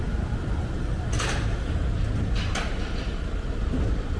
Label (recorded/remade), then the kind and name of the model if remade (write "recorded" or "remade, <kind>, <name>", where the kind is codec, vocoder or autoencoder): recorded